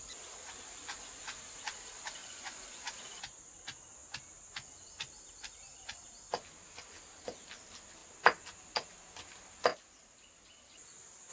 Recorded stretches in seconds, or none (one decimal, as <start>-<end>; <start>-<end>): 0.0-2.2; 2.9-11.3